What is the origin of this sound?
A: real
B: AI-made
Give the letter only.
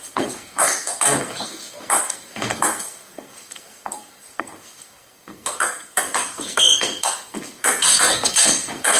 B